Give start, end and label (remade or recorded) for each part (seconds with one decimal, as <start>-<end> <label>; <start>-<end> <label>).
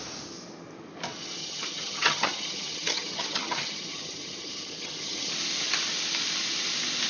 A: 0.0-1.4 recorded; 1.4-5.3 remade; 5.3-7.1 recorded